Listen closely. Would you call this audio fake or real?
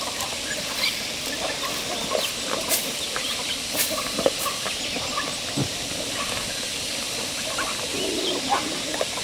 fake